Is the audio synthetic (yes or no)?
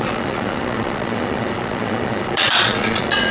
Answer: yes